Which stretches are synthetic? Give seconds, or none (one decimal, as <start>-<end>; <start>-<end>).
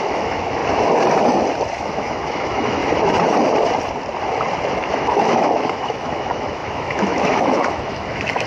0.0-0.6; 1.8-2.8; 4.9-8.5